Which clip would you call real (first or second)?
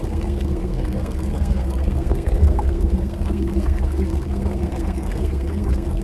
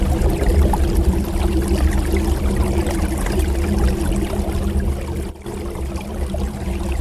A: second